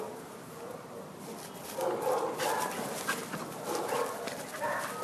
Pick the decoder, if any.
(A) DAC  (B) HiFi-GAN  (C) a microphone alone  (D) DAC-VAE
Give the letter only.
C